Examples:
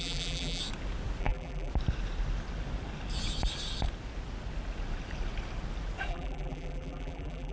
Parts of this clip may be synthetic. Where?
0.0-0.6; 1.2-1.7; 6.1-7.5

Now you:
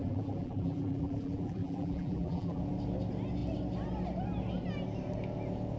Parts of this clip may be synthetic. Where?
0.0-2.6

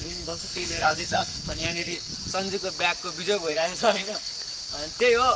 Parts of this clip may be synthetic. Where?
0.0-2.1; 3.5-4.3

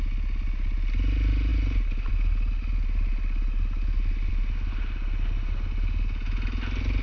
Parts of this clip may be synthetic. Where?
none

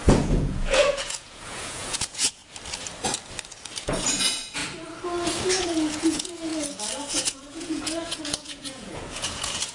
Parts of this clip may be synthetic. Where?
0.0-2.4; 3.8-4.6; 5.6-6.5; 7.1-9.7

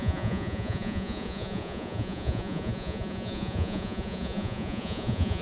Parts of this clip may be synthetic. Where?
0.0-5.4